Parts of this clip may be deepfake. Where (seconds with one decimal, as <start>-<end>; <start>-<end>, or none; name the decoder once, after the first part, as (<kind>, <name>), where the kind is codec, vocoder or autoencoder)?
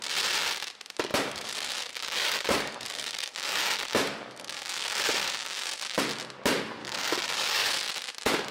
1.1-6.0 (codec, DAC); 6.8-7.7